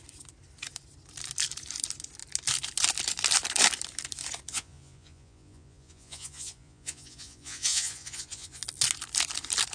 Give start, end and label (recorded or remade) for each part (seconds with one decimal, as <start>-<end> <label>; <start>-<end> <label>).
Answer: 0.0-4.5 recorded; 4.5-8.6 remade; 8.6-9.7 recorded